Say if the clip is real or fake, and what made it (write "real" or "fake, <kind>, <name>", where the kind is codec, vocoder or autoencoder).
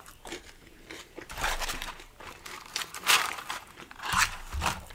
fake, vocoder, BigVGAN v2